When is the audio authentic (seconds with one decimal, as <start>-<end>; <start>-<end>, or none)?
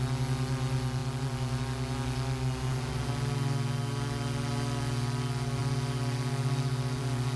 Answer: 0.0-7.4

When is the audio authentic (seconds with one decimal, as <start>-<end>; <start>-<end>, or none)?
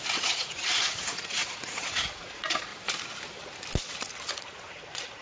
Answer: 2.7-4.3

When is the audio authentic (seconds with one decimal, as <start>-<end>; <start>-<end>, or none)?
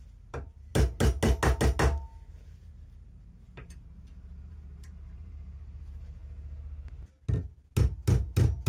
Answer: 0.7-2.3; 6.2-8.7